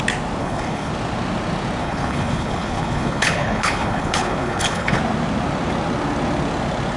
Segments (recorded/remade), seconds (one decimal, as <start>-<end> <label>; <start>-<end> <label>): 0.0-0.4 recorded; 0.4-0.9 remade; 0.9-1.8 recorded; 1.8-5.0 remade; 5.0-7.0 recorded